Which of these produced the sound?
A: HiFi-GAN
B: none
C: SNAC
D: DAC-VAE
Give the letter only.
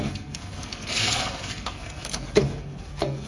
C